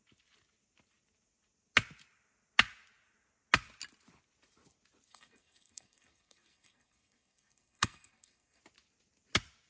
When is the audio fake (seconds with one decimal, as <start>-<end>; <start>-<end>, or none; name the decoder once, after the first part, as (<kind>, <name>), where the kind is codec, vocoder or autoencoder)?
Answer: 5.1-8.6 (codec, SNAC)